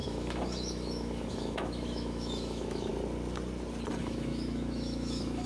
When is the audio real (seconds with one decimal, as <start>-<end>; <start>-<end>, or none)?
2.9-4.0